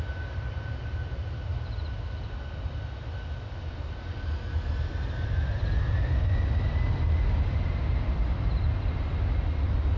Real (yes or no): yes